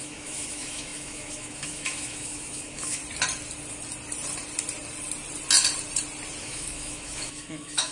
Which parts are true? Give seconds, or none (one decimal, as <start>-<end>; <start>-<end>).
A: 3.0-6.4